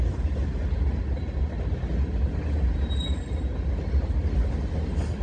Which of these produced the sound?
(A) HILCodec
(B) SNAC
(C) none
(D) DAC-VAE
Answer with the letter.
C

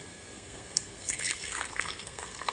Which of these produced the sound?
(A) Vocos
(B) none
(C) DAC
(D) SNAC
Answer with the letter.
D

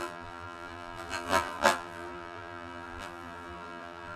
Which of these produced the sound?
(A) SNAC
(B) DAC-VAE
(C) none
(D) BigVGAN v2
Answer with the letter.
D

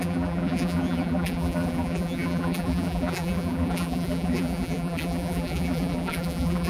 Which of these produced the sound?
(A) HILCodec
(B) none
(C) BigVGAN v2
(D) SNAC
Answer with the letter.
C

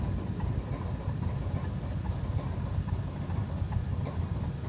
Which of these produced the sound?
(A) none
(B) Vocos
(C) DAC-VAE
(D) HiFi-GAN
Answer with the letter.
A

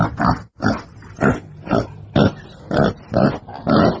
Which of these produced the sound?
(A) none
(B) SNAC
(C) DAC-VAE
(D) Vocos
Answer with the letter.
A